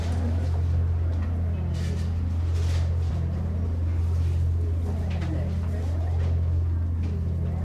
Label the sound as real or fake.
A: real